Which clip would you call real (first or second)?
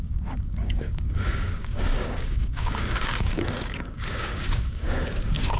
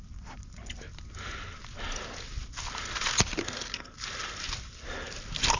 second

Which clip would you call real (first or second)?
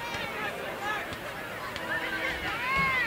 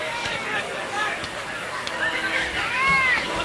first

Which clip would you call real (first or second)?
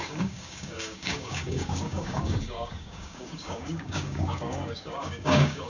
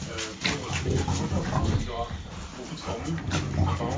second